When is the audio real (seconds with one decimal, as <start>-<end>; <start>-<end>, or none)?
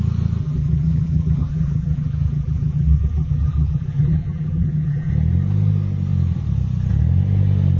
0.0-0.4; 5.1-7.8